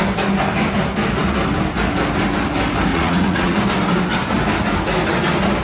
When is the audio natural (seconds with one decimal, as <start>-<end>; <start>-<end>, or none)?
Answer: 0.0-2.9; 3.6-5.6